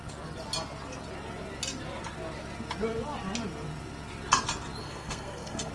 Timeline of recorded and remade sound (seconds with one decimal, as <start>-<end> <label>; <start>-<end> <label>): 0.0-4.8 recorded; 4.8-5.7 remade